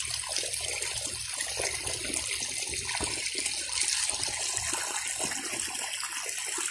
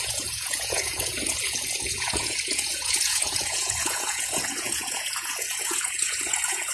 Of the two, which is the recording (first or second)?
first